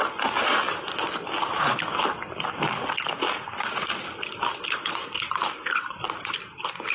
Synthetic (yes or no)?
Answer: no